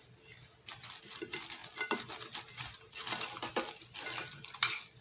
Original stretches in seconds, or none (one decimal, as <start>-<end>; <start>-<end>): 0.0-1.6; 4.6-5.0